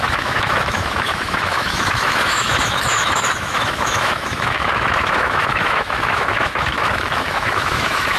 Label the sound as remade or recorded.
remade